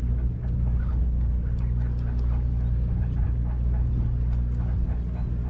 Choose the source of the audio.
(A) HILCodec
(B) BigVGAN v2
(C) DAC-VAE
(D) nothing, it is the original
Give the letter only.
D